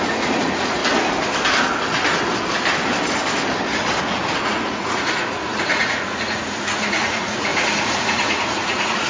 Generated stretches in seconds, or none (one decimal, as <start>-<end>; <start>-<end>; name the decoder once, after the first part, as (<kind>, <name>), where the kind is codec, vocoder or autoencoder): 0.0-0.8 (vocoder, Vocos); 4.0-9.1